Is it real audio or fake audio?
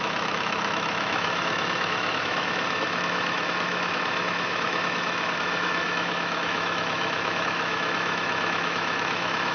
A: fake